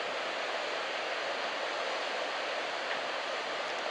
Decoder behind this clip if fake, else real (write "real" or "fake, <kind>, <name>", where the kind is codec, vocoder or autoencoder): real